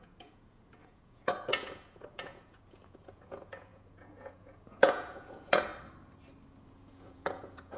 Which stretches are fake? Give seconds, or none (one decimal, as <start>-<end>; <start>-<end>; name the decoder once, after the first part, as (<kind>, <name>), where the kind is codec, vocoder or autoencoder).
0.0-5.7 (vocoder, Vocos); 6.7-7.8